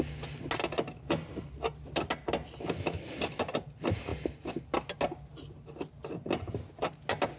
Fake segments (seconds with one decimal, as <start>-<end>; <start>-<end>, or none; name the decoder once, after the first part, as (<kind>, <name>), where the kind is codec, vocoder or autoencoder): none